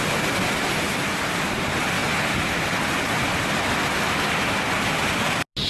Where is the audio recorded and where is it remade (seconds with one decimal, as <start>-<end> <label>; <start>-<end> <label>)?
0.0-5.7 recorded